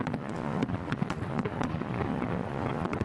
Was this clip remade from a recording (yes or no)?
yes